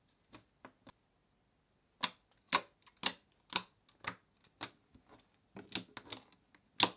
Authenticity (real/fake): real